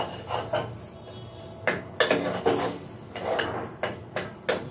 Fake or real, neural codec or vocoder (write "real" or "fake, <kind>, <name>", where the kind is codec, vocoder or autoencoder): real